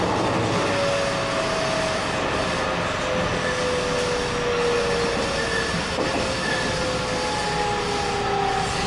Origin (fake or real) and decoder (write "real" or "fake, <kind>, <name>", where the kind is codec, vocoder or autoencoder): real